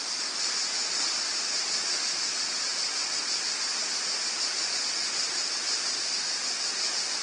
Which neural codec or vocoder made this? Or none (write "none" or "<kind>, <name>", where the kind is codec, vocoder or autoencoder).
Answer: none